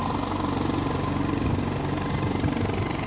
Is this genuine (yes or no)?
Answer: yes